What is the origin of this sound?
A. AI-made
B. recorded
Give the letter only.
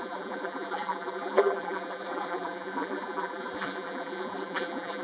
A